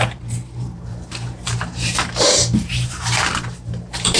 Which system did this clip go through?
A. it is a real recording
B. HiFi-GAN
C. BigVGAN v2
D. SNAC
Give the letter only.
C